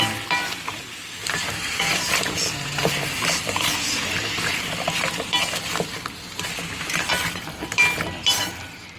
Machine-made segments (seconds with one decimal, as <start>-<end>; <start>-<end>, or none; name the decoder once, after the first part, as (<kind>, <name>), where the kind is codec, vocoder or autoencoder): 1.2-2.4 (vocoder, BigVGAN v2); 5.9-7.1